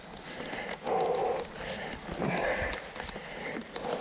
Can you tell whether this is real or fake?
real